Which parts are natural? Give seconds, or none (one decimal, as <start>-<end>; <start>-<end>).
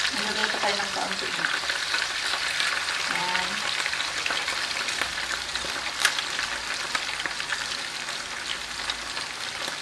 0.0-0.4; 2.0-9.8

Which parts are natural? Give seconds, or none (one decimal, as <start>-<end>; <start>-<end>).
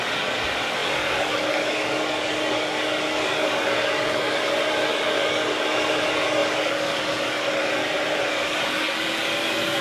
7.8-8.3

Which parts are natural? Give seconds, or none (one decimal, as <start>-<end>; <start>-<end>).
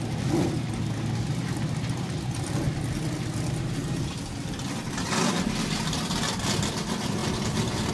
0.0-7.9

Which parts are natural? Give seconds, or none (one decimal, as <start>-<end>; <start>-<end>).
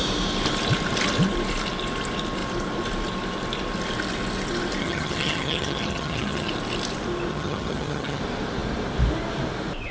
0.0-4.8; 6.5-7.3; 8.2-9.9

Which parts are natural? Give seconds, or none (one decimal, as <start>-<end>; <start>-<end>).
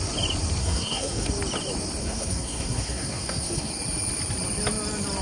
0.0-0.6; 1.3-2.0; 3.7-5.2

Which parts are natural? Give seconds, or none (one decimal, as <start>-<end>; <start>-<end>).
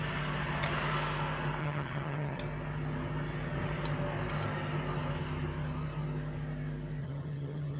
0.0-1.6; 2.4-7.0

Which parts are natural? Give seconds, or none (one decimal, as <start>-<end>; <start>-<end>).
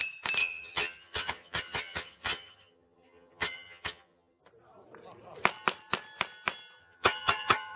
0.0-0.4; 4.4-6.8